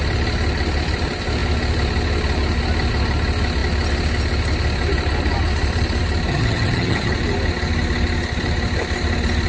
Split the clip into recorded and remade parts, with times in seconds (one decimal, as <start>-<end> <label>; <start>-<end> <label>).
0.0-6.3 recorded; 6.3-7.1 remade; 7.1-9.5 recorded